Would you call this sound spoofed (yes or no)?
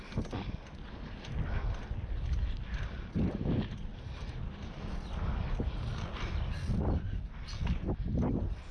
no